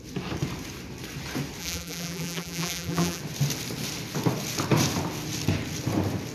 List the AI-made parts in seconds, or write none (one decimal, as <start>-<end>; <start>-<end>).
1.6-3.2